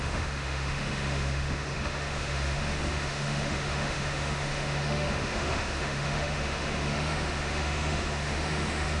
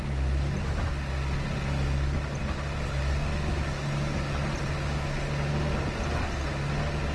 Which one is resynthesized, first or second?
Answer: first